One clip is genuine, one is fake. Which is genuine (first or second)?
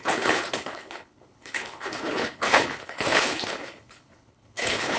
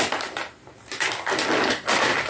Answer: second